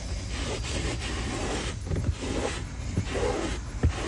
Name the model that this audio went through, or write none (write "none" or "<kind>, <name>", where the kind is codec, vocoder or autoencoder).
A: none